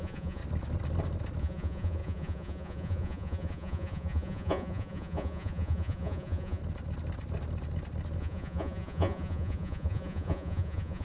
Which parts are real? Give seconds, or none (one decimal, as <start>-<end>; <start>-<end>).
0.4-1.4; 6.6-8.2